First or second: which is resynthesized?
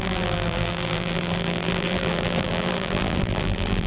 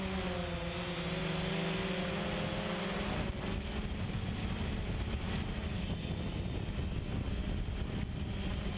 first